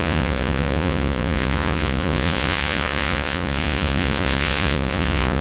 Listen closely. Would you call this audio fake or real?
fake